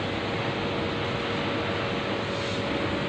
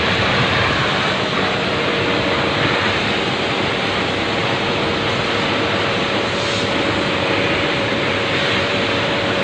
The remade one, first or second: second